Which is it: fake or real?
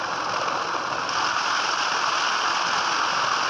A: real